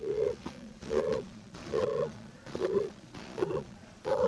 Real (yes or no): no